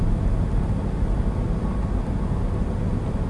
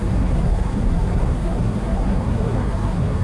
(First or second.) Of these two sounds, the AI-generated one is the second